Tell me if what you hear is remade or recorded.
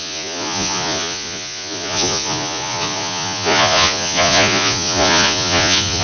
remade